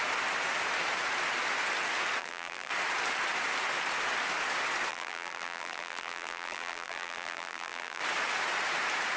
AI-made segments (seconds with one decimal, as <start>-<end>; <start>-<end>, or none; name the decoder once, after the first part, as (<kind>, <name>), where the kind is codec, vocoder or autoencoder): 2.2-2.7 (vocoder, BigVGAN v2); 4.9-8.0